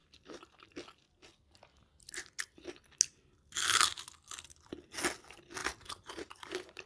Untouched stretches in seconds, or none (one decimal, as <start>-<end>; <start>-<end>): 0.0-5.6